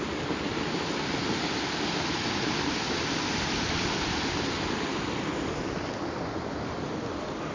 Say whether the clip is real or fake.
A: real